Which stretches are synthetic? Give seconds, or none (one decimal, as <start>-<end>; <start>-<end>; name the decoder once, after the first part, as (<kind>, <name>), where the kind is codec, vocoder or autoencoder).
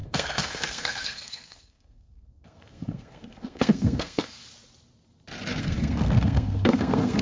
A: 0.0-4.4 (codec, SNAC); 5.6-7.2